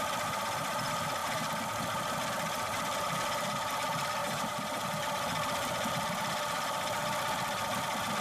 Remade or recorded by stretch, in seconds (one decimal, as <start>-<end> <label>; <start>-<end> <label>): 0.0-4.2 recorded; 4.2-4.8 remade; 4.8-8.2 recorded